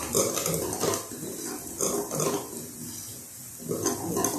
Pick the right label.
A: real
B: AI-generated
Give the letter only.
A